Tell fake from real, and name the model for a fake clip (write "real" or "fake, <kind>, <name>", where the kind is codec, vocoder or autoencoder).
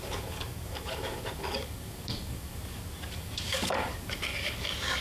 fake, codec, DAC